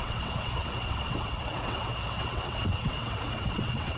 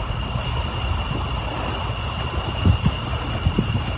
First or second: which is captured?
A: second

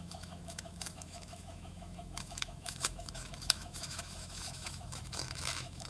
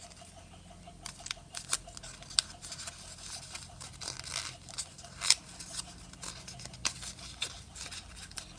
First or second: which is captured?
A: second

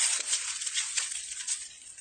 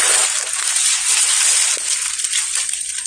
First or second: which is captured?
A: second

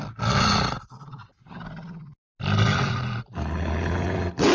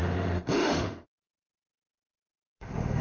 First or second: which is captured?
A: first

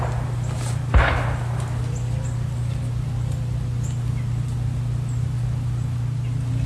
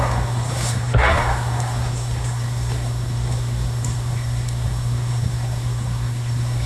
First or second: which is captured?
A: first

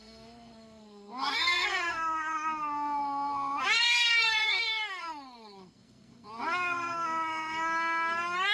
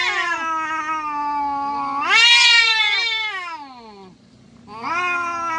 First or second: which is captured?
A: second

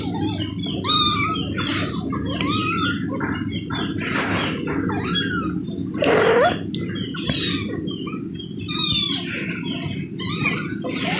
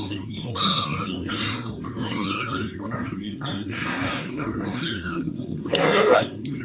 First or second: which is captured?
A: first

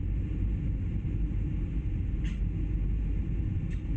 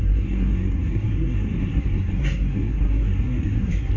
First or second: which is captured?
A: first